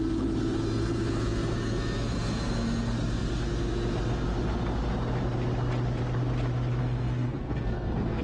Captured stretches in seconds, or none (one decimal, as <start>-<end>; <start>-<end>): 0.0-6.8